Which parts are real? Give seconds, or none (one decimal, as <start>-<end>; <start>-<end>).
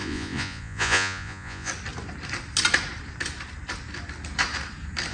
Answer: 1.7-5.1